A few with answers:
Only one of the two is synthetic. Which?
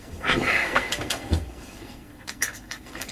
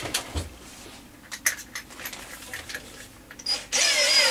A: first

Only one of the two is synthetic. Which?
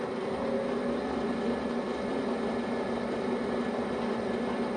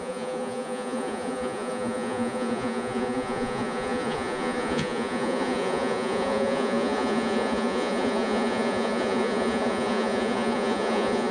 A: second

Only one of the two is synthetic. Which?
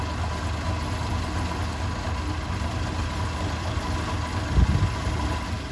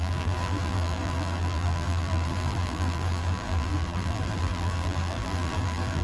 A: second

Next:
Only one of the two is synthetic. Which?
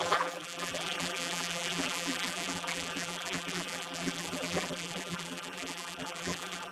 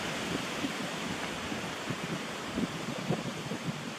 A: first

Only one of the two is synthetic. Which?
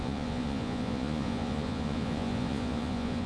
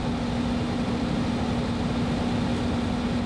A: first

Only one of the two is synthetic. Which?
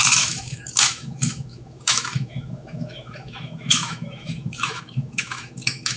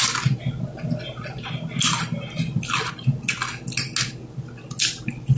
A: first